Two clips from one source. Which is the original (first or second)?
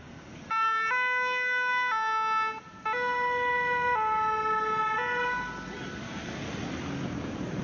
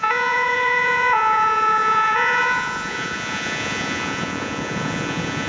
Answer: first